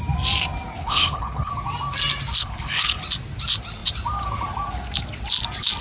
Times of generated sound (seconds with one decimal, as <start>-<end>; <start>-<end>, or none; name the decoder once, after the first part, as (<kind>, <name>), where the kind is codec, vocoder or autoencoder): 0.8-1.5 (codec, HILCodec); 2.4-3.0

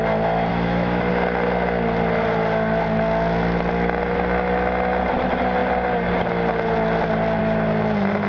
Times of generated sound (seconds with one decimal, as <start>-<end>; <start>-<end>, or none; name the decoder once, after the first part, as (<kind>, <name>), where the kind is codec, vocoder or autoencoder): 0.5-1.1 (autoencoder, DAC-VAE)

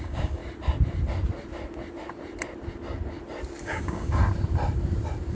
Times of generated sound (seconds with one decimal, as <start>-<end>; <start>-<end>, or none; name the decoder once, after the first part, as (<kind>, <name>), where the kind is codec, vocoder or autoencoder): 0.0-0.4 (codec, DAC); 3.6-4.2